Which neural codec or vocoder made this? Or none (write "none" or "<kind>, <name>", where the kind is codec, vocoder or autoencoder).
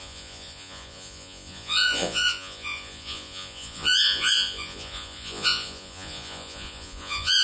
vocoder, Vocos